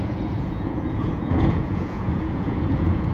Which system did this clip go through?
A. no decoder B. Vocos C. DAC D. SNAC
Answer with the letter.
B